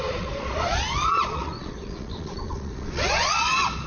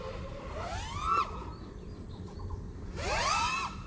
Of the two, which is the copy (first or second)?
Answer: first